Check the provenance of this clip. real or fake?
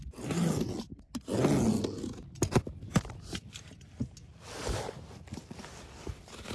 real